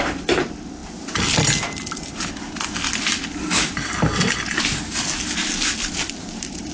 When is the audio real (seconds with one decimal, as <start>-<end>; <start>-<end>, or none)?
0.0-6.7